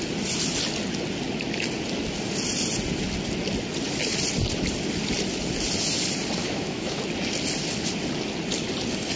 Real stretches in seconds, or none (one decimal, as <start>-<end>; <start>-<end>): 0.0-6.4; 7.0-9.2